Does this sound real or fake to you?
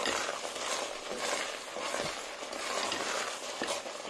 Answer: real